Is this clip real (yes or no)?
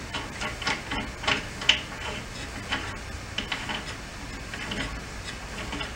yes